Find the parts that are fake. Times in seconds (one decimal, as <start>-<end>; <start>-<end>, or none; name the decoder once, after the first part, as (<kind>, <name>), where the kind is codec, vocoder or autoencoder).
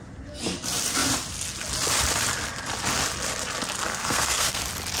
3.9-4.6 (codec, SNAC)